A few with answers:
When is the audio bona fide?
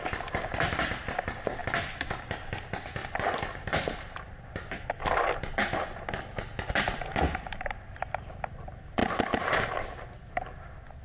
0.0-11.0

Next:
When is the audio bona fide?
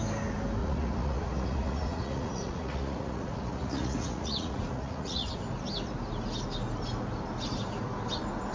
0.0-0.6; 5.4-8.5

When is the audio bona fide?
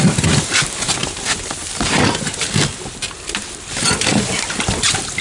0.0-5.2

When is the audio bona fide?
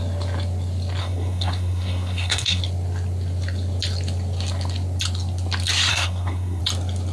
0.0-1.0; 2.6-5.9; 6.6-7.1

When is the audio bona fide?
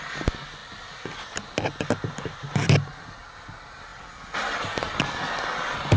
0.0-6.0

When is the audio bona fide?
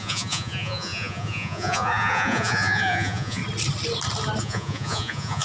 3.4-4.4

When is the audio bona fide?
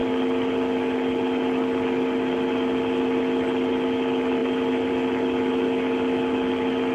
0.0-4.4; 4.9-6.9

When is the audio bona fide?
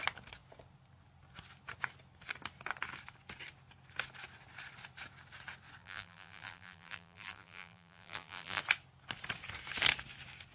0.0-5.8; 8.6-10.5